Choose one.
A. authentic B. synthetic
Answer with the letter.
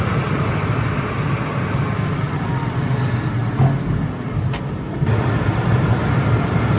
A